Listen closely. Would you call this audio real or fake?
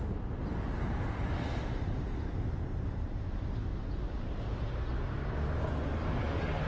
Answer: real